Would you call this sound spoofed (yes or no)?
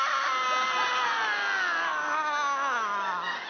no